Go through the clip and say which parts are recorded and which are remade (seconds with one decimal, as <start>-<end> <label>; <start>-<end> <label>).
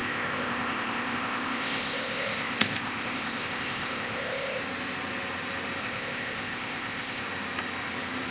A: 0.0-4.6 remade; 4.6-5.8 recorded; 5.8-7.2 remade; 7.2-8.3 recorded